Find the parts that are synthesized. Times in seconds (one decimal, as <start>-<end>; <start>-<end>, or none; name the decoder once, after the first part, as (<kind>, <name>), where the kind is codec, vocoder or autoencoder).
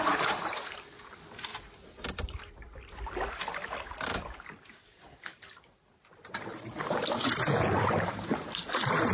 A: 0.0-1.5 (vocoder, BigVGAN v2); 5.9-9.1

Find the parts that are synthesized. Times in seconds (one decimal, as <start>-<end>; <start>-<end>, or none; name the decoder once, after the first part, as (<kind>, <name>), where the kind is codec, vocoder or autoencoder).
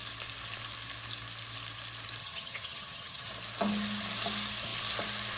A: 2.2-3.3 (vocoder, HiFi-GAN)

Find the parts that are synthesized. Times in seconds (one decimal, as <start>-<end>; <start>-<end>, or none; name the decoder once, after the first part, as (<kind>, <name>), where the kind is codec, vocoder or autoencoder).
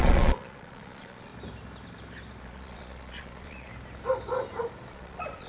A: 0.0-1.3 (vocoder, Vocos); 2.4-3.7; 4.9-5.5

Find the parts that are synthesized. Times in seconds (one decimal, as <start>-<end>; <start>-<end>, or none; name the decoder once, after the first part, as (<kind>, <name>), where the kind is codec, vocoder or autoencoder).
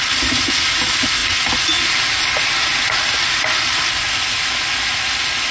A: none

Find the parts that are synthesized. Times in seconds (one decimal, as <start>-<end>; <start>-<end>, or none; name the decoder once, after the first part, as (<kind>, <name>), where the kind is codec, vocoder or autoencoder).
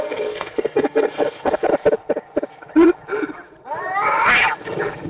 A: 0.0-1.7 (codec, SNAC)